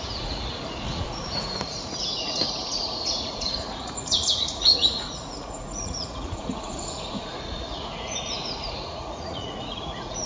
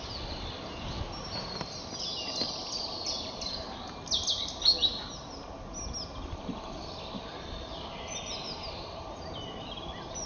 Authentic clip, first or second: second